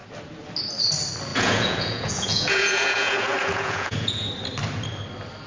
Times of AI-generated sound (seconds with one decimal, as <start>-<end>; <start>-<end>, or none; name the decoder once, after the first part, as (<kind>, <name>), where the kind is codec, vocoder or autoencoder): 1.3-4.3 (vocoder, Vocos)